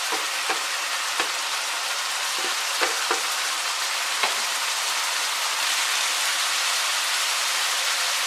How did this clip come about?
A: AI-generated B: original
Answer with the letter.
A